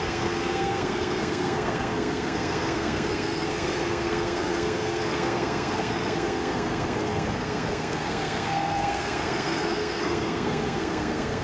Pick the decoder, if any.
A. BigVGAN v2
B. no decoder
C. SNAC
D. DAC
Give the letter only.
C